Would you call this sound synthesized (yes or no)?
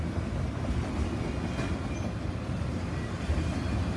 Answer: no